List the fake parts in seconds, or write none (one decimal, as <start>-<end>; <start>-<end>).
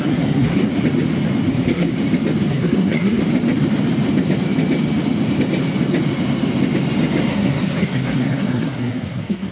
0.0-0.7; 1.5-1.9; 2.5-3.2; 7.3-9.5